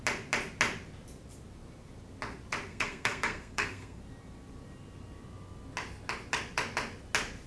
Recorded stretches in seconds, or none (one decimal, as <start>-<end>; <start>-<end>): 0.0-2.7; 4.0-7.5

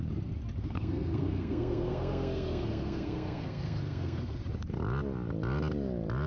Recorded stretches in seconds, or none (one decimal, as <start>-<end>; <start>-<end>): 0.0-0.6; 4.4-6.3

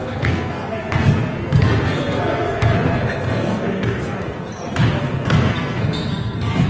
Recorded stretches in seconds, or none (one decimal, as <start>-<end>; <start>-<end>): 4.5-5.0

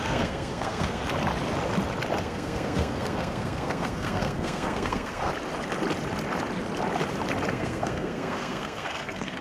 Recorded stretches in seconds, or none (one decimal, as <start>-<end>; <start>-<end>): 1.0-2.2; 5.3-7.5

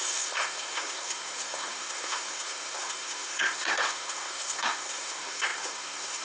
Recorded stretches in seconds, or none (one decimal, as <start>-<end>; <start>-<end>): none

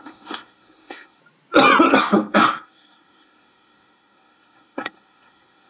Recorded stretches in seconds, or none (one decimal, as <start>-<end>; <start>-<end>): 1.2-2.0